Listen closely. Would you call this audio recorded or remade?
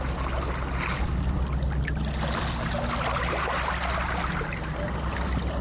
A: recorded